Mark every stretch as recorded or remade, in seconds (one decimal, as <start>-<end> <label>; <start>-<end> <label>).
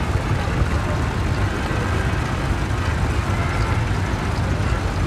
0.0-1.7 remade; 1.7-5.1 recorded